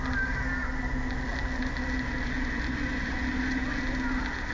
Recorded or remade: recorded